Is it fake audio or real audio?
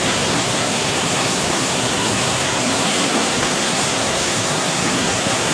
fake